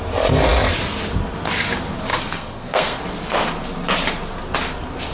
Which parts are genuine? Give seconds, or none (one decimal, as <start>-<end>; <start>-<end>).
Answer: 0.0-2.1; 3.0-5.1